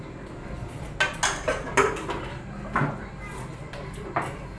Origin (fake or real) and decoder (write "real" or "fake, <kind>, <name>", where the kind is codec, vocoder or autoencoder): real